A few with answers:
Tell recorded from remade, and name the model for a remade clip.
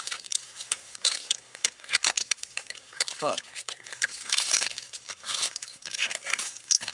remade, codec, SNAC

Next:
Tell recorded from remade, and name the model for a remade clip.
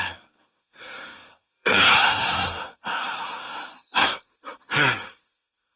remade, codec, SNAC